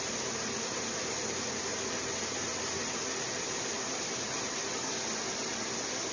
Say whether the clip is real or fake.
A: real